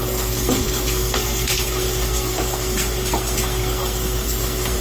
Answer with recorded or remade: remade